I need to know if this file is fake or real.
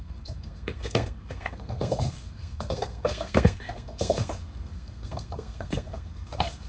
fake